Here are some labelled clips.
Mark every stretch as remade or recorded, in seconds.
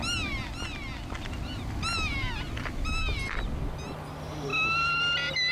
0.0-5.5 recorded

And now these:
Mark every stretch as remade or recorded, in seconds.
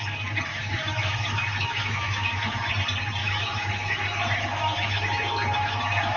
0.0-0.5 recorded; 0.5-2.7 remade; 2.7-3.2 recorded; 3.2-6.2 remade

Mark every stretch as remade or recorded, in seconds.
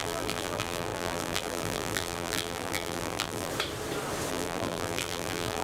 0.0-3.5 remade; 3.5-4.3 recorded; 4.3-5.6 remade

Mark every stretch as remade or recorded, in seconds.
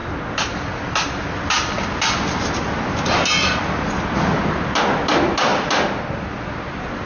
0.0-7.1 recorded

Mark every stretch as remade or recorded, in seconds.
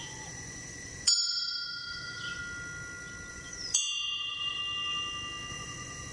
0.0-2.4 remade; 2.4-3.3 recorded; 3.3-4.6 remade; 4.6-5.5 recorded; 5.5-6.1 remade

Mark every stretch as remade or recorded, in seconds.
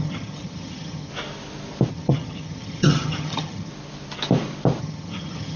0.0-1.1 remade; 1.1-1.9 recorded; 1.9-3.7 remade; 3.7-4.8 recorded; 4.8-5.6 remade